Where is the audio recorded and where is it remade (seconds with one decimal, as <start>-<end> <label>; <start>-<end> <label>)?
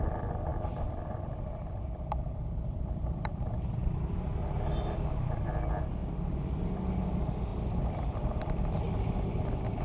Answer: 0.0-0.5 recorded; 0.5-3.4 remade; 3.4-7.5 recorded; 7.5-8.6 remade; 8.6-9.8 recorded